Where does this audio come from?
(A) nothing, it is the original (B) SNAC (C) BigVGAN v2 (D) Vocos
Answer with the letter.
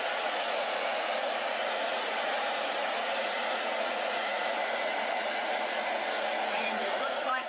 D